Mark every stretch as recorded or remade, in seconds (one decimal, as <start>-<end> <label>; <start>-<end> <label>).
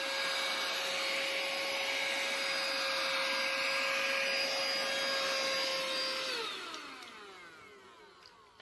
0.0-8.6 recorded